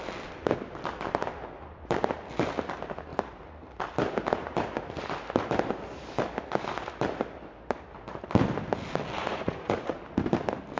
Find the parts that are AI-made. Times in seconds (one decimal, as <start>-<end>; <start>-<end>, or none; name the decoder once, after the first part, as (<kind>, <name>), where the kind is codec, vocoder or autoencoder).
9.2-10.0 (vocoder, Vocos)